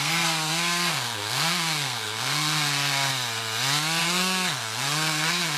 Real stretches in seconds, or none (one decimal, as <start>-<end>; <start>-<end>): 3.1-4.0